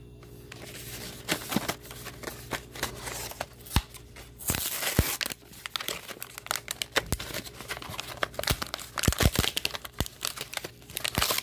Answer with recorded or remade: recorded